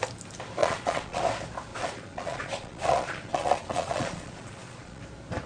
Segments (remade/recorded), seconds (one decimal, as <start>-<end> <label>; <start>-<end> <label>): 0.0-0.6 recorded; 0.6-1.2 remade; 1.2-1.7 recorded; 1.7-5.0 remade; 5.0-5.5 recorded